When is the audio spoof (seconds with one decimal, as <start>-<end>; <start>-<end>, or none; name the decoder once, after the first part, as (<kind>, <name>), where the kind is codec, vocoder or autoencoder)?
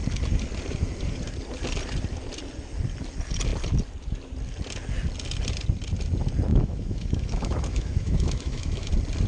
6.5-8.9 (autoencoder, DAC-VAE)